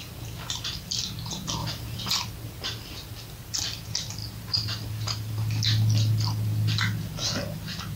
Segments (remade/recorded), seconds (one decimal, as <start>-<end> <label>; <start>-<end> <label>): 0.0-1.6 recorded; 1.6-2.1 remade; 2.1-8.0 recorded